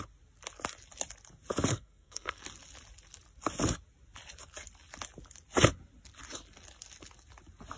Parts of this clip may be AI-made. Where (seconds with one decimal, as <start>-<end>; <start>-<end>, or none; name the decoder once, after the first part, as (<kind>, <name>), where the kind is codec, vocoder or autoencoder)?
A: 1.7-2.4 (codec, SNAC)